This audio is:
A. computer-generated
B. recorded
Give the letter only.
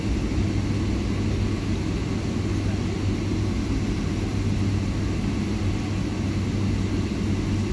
B